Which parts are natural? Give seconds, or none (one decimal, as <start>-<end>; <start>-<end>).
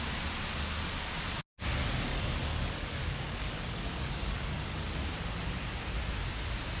0.0-2.1; 5.0-6.8